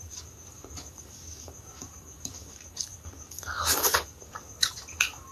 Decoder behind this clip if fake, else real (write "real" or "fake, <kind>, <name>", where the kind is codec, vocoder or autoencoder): fake, codec, DAC